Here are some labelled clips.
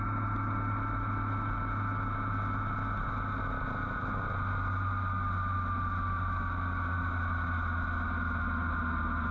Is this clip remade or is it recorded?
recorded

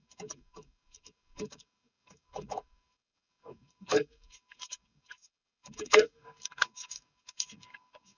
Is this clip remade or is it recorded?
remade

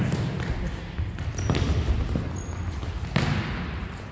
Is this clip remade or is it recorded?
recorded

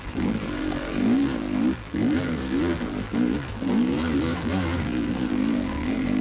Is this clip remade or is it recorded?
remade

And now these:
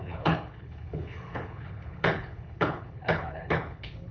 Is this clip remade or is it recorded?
remade